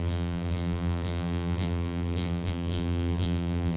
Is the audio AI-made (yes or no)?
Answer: yes